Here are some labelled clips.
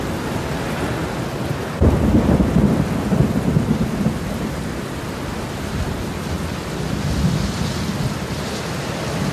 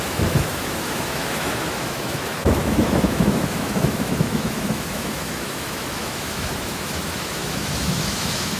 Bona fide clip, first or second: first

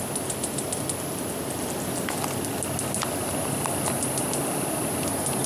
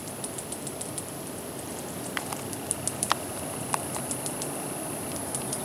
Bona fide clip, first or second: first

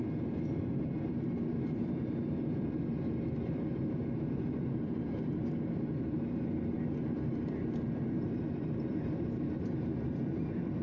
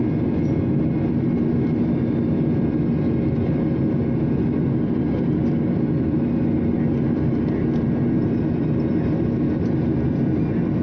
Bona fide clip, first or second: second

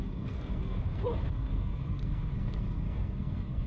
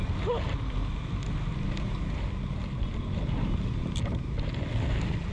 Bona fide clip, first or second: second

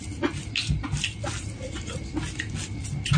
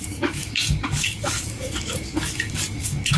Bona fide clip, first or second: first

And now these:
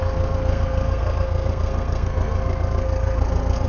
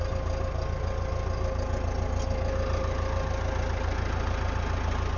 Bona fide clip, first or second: second